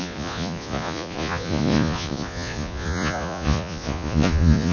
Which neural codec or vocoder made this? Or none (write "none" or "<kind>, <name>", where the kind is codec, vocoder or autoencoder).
vocoder, Vocos